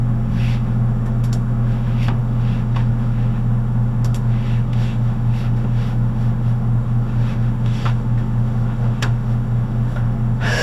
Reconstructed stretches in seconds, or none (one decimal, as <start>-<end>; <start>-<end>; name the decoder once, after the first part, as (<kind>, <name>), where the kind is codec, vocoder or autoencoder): 0.0-10.6 (autoencoder, DAC-VAE)

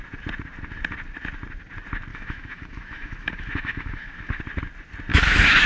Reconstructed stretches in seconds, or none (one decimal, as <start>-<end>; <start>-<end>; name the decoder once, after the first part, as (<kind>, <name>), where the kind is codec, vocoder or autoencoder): 2.1-4.4 (autoencoder, DAC-VAE); 5.1-5.7